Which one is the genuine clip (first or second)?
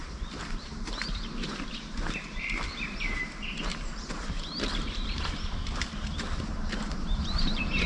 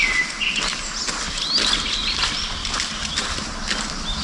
second